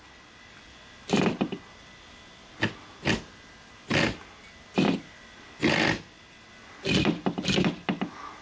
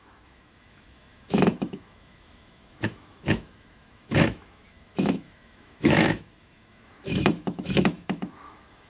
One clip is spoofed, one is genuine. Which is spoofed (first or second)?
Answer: second